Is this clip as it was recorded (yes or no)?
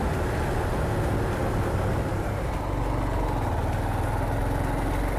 yes